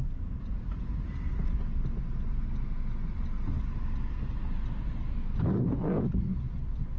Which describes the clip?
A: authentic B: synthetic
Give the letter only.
A